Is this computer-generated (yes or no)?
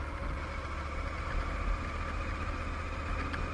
no